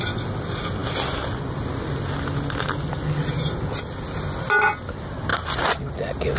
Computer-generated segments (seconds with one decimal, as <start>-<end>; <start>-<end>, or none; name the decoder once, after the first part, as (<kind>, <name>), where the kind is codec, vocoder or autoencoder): none